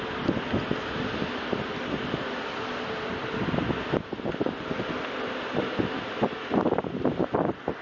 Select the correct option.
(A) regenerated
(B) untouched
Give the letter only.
B